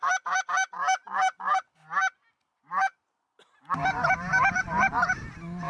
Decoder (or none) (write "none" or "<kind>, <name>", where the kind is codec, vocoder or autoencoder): none